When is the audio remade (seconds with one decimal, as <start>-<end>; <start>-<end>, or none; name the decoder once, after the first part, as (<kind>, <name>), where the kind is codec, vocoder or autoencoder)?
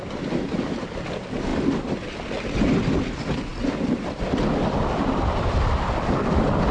none